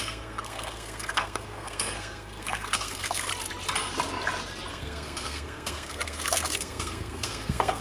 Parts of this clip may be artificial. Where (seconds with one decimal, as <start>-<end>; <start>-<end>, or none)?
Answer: 0.0-3.3; 4.7-7.8